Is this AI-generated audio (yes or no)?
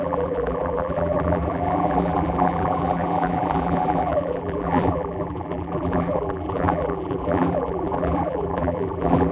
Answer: yes